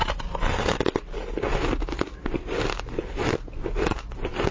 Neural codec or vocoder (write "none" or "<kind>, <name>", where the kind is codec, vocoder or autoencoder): none